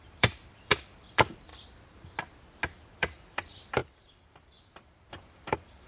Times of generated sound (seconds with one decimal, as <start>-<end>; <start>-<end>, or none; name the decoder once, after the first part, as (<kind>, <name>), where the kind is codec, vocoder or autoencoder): 0.0-1.5 (vocoder, BigVGAN v2); 3.0-5.9